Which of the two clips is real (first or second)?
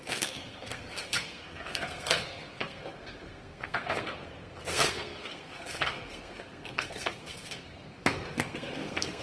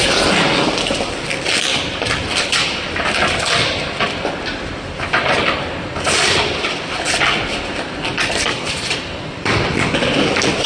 second